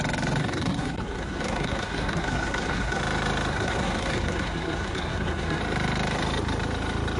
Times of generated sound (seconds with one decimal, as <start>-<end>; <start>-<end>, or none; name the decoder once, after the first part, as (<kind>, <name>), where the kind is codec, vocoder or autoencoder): 0.4-3.0 (codec, SNAC); 3.5-5.6